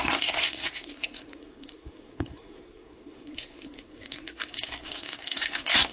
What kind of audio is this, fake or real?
fake